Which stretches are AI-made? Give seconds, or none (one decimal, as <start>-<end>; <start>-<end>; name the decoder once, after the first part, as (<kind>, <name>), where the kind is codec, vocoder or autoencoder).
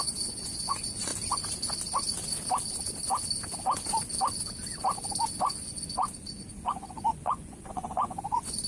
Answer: 0.0-1.1 (vocoder, Vocos); 5.4-8.7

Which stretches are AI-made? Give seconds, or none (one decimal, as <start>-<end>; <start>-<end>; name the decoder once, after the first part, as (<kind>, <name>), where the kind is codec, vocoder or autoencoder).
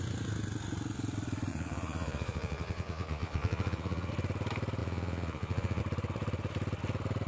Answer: 1.5-4.1 (vocoder, Vocos); 4.8-5.8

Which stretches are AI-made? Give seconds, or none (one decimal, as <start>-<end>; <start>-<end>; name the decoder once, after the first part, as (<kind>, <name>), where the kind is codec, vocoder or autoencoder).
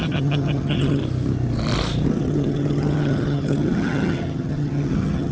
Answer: 0.0-1.0 (vocoder, HiFi-GAN); 2.1-5.3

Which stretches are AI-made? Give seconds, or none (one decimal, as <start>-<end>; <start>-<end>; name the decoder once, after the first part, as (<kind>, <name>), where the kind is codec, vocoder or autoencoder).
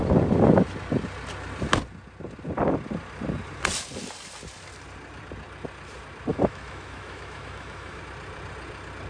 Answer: 6.3-8.0 (autoencoder, DAC-VAE)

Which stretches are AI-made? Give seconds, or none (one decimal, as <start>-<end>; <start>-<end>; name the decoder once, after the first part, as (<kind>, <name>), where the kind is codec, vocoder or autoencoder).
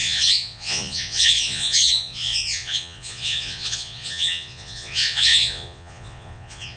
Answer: 0.0-6.8 (vocoder, Vocos)